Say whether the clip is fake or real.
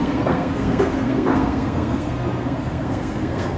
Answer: fake